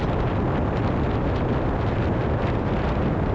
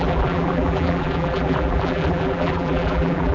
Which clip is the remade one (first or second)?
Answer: second